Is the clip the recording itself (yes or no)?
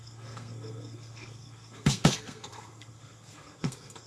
no